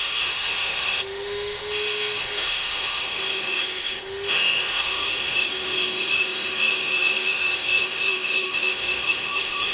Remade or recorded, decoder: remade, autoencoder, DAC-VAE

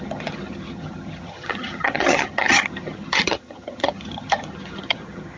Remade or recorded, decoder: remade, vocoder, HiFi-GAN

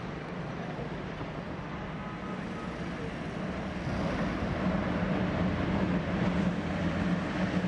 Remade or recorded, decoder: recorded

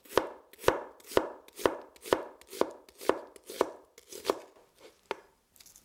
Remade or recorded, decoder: recorded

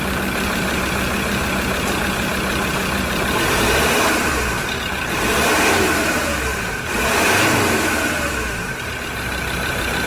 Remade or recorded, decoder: remade, vocoder, BigVGAN v2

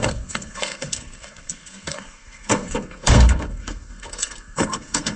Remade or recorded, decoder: remade, codec, SNAC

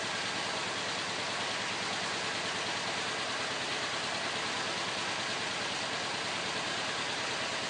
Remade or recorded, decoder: recorded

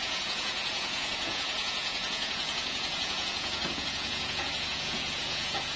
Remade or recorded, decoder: remade, vocoder, Vocos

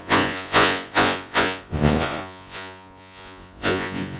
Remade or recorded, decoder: remade, vocoder, Vocos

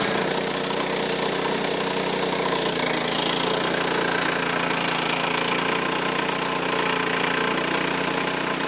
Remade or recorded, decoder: recorded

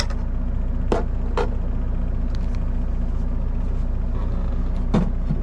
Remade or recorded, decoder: recorded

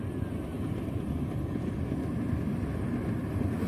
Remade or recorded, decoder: recorded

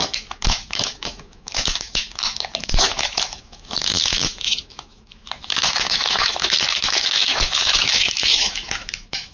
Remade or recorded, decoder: remade, autoencoder, DAC-VAE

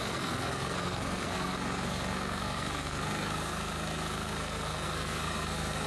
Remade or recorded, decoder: remade, codec, SNAC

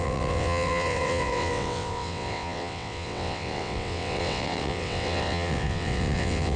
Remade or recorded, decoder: remade, vocoder, WaveNeXt